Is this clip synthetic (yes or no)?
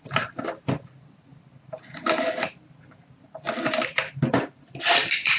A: yes